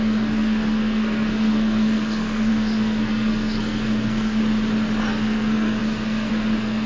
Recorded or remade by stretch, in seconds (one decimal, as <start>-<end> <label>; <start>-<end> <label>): 0.0-4.4 remade; 4.4-5.1 recorded; 5.1-6.9 remade